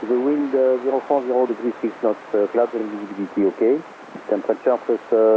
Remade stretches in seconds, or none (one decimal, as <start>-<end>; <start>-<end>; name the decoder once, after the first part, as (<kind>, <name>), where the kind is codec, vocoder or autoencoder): 0.4-1.5 (codec, DAC)